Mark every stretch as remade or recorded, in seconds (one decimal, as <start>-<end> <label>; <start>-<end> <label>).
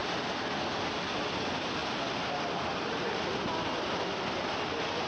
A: 0.0-5.1 recorded